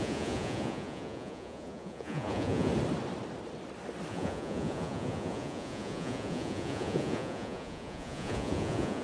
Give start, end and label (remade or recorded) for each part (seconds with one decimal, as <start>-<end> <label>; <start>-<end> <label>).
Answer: 0.0-2.7 remade; 2.7-4.1 recorded; 4.1-9.0 remade